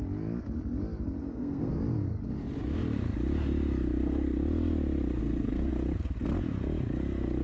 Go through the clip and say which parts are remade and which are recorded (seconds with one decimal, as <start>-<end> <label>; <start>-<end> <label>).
0.0-1.2 recorded; 1.2-1.7 remade; 1.7-5.2 recorded; 5.2-5.7 remade; 5.7-7.4 recorded